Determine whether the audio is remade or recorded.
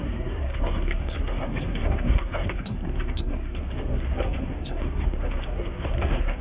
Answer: remade